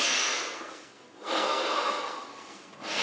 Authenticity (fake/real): fake